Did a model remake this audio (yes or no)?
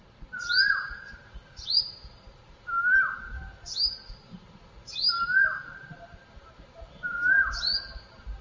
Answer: yes